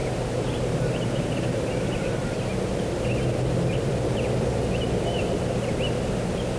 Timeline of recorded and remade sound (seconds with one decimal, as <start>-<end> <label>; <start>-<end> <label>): 0.0-2.4 remade; 2.4-6.6 recorded